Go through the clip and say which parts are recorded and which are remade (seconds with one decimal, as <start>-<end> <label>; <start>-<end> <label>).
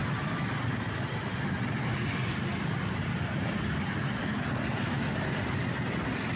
0.0-6.4 recorded